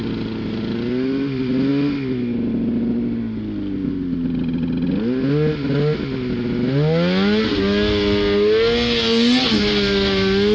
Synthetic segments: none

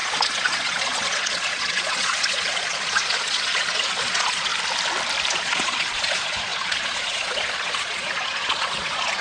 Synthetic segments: 0.0-4.5 (vocoder, Vocos); 5.3-9.2

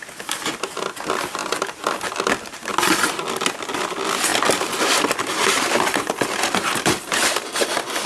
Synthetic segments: none

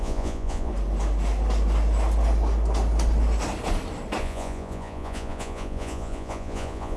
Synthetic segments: 0.0-0.7 (vocoder, Vocos); 4.2-7.0